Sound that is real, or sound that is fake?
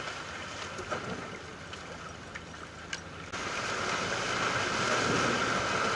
real